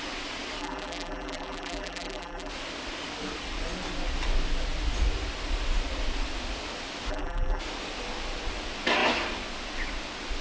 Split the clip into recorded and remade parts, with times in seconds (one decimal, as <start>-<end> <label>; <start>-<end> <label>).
0.0-0.6 recorded; 0.6-2.5 remade; 2.5-7.1 recorded; 7.1-7.6 remade; 7.6-10.4 recorded